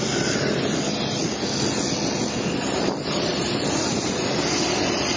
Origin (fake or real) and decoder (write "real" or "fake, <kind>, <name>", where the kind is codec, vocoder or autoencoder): real